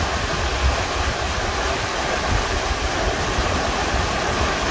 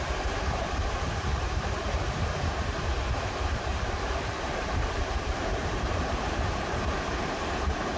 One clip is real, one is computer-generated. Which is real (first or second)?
first